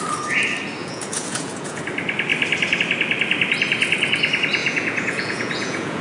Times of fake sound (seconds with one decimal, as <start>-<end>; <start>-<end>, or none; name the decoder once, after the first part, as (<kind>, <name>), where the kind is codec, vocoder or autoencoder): 0.8-1.8 (vocoder, Vocos); 4.6-6.0